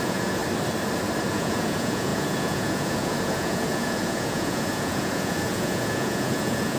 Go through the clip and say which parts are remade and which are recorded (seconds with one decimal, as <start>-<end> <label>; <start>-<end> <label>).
0.0-0.4 remade; 0.4-1.3 recorded; 1.3-6.8 remade